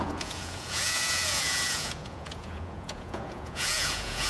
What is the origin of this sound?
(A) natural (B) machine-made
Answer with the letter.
B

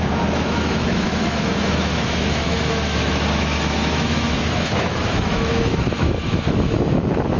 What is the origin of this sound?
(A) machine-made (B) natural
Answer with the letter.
A